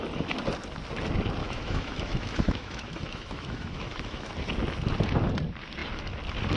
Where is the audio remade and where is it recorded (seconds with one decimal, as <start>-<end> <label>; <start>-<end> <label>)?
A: 0.0-1.4 recorded; 1.4-4.3 remade; 4.3-6.6 recorded